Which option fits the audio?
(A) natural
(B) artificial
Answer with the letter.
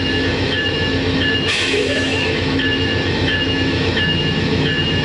B